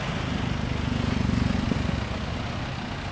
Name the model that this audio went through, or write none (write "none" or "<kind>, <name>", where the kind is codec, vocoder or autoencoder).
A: none